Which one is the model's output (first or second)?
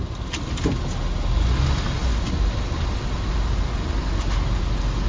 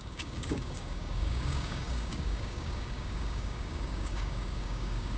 second